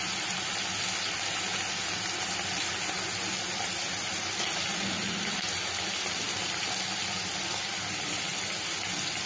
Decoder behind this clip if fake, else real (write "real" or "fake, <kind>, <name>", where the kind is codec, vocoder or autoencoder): real